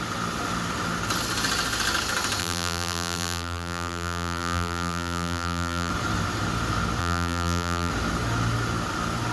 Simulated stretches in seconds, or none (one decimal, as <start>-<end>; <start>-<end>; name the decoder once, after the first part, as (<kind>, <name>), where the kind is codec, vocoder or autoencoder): 2.4-5.9 (vocoder, BigVGAN v2); 7.0-7.9